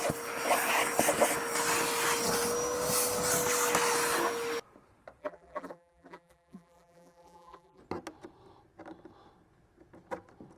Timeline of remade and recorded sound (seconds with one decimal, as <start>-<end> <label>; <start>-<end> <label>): 0.0-5.2 recorded; 5.2-7.8 remade; 7.8-10.6 recorded